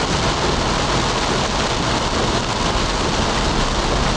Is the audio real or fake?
real